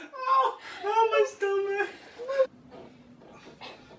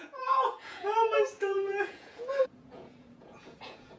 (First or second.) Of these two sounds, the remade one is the second